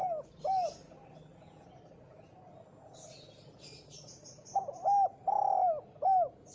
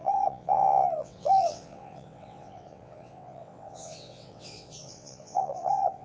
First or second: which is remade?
second